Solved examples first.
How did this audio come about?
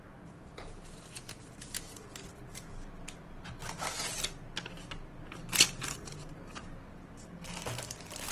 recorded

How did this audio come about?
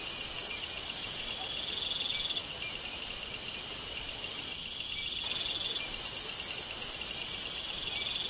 recorded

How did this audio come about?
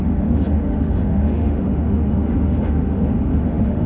remade